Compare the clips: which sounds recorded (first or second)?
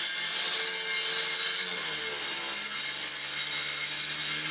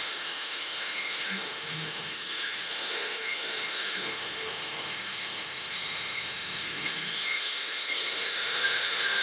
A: first